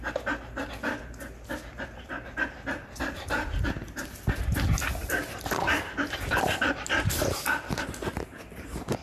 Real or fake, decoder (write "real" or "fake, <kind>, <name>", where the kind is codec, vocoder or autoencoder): real